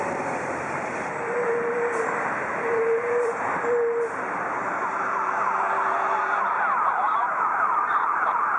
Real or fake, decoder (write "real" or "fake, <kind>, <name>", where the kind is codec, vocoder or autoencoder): fake, vocoder, BigVGAN v2